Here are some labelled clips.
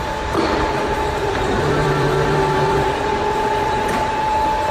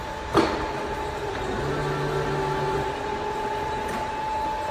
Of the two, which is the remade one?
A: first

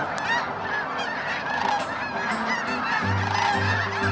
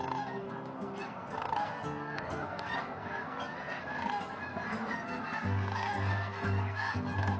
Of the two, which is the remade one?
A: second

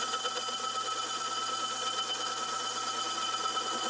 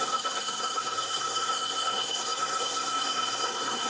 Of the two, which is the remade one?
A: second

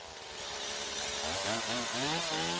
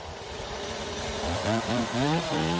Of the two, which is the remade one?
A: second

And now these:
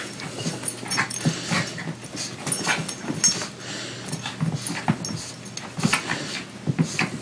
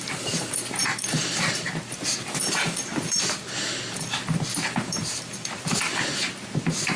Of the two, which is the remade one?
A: second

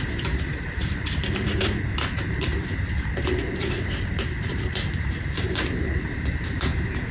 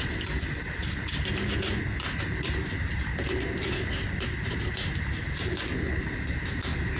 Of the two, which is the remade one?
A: first